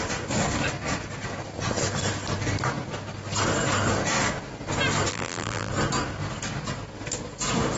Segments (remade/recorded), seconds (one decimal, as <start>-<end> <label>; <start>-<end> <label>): 0.0-5.1 recorded; 5.1-5.7 remade; 5.7-7.8 recorded